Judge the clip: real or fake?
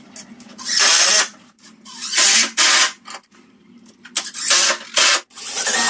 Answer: real